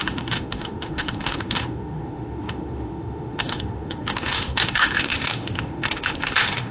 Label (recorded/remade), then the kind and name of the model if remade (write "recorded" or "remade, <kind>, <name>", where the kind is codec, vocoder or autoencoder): remade, autoencoder, DAC-VAE